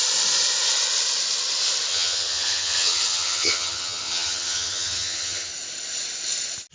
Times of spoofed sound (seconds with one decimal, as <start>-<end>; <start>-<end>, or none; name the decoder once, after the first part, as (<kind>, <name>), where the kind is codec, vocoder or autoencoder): 1.9-5.5 (vocoder, HiFi-GAN)